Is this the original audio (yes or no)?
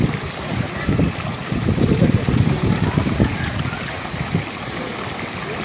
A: yes